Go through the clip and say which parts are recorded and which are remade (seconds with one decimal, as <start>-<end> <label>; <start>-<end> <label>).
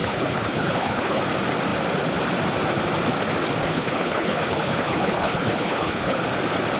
0.0-1.2 remade; 1.2-3.7 recorded; 3.7-6.2 remade; 6.2-6.8 recorded